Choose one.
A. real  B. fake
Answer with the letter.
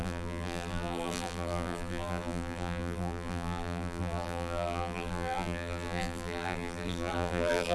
B